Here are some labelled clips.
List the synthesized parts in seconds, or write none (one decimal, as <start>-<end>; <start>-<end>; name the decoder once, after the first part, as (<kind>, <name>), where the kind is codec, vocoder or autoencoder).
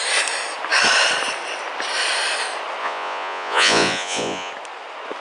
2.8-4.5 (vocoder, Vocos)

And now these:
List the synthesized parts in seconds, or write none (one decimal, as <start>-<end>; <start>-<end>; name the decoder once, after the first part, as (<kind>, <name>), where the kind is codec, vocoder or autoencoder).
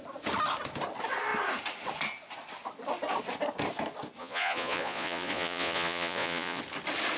4.2-6.6 (vocoder, Vocos)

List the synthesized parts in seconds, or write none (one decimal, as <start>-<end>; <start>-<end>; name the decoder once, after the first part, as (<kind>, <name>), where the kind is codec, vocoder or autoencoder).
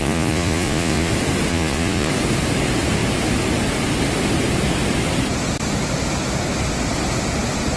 0.0-1.1 (vocoder, Vocos); 1.5-2.1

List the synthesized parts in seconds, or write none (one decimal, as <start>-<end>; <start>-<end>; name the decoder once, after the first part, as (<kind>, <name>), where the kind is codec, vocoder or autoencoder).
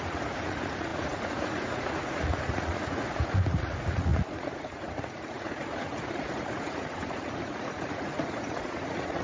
0.0-9.2 (vocoder, Vocos)